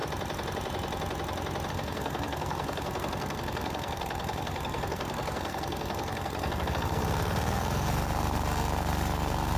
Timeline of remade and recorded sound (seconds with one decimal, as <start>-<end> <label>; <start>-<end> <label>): 0.0-1.7 recorded; 1.7-9.6 remade